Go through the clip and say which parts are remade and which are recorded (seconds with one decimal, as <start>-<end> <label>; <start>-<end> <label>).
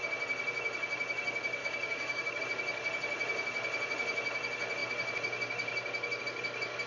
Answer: 0.0-1.6 recorded; 1.6-2.4 remade; 2.4-6.9 recorded